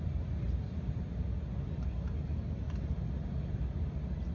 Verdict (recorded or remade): recorded